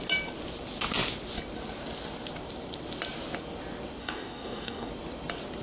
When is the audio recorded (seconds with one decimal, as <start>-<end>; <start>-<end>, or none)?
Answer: 0.0-4.0; 4.9-5.6